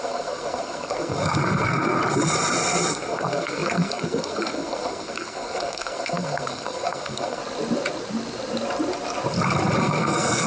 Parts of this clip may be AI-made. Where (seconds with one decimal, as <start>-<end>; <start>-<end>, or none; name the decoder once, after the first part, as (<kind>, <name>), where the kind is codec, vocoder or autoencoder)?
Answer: 0.0-2.0 (codec, SNAC); 2.9-7.4; 9.8-10.5

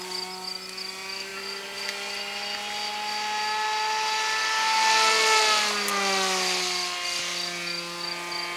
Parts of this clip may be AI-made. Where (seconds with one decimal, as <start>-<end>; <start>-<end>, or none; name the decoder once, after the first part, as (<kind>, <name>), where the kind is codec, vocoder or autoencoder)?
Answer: none